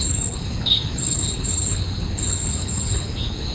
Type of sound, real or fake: fake